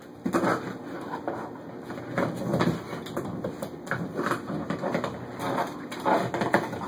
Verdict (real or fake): real